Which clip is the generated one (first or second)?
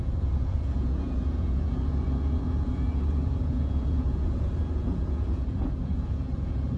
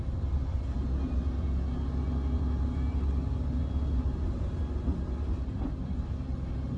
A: first